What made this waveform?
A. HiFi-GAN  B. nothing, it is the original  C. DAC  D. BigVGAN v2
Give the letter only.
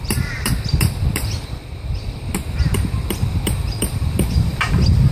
D